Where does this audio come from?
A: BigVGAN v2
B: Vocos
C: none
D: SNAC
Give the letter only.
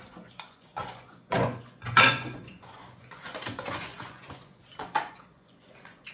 B